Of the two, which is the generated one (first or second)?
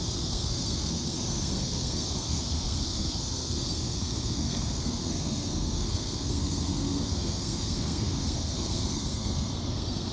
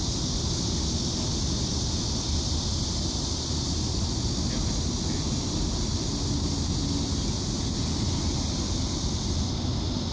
first